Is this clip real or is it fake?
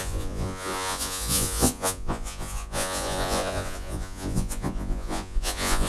fake